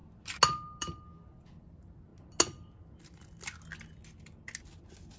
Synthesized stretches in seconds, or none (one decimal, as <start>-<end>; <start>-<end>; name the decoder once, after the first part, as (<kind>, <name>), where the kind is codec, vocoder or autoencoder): none